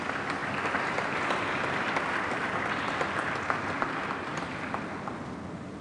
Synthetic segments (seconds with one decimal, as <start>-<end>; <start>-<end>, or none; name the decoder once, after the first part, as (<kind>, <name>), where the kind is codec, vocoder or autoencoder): none